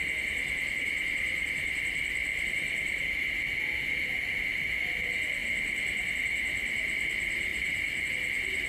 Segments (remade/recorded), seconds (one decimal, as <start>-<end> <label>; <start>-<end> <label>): 0.0-2.3 recorded; 2.3-3.2 remade; 3.2-5.4 recorded; 5.4-6.1 remade; 6.1-7.5 recorded; 7.5-8.1 remade; 8.1-8.7 recorded